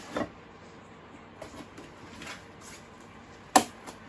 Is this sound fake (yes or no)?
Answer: no